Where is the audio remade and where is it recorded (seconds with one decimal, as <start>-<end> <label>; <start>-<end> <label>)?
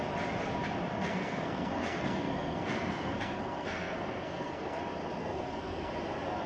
0.0-0.9 recorded; 0.9-4.8 remade; 4.8-5.2 recorded; 5.2-5.9 remade; 5.9-6.5 recorded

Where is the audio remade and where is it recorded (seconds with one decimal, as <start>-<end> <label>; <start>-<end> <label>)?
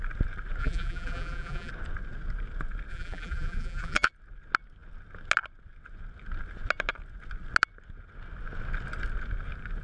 0.0-0.6 recorded; 0.6-1.7 remade; 1.7-2.9 recorded; 2.9-4.1 remade; 4.1-9.8 recorded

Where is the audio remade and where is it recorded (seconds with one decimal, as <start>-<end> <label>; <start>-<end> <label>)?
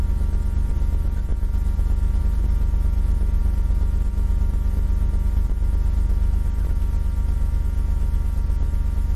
0.0-9.2 recorded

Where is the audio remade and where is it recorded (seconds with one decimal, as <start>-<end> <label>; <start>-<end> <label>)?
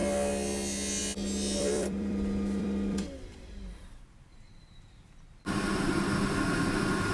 0.0-1.6 recorded; 1.6-5.9 remade; 5.9-7.1 recorded